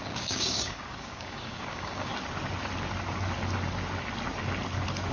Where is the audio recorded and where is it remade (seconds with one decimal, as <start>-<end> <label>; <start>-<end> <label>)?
0.0-2.1 remade; 2.1-5.1 recorded